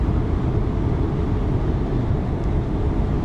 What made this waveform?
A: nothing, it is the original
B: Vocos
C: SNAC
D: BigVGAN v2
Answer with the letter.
A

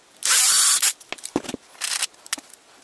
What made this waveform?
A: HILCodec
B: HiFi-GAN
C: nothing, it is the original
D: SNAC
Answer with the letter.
C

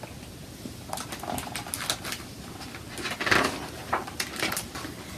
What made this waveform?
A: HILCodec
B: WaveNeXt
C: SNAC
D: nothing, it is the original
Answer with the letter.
D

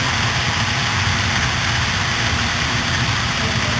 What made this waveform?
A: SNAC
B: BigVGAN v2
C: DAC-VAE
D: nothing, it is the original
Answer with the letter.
D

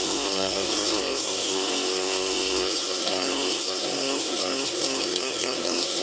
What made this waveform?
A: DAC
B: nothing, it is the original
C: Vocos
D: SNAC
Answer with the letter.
D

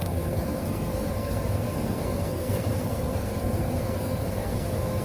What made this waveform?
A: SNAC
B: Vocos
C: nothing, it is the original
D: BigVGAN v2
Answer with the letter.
A